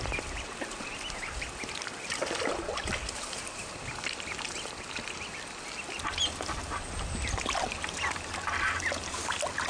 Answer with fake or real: real